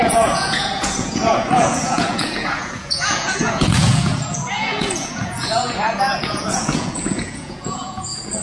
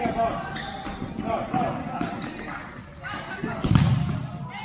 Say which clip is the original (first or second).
second